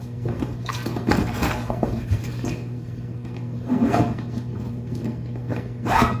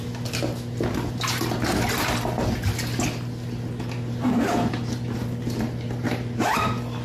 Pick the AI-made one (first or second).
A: first